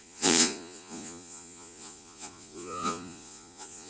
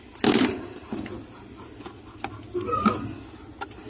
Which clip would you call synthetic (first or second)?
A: first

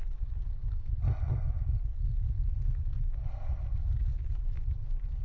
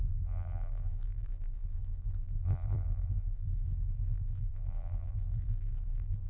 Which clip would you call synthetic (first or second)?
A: second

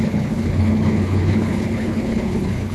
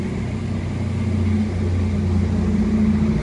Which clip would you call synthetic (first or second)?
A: first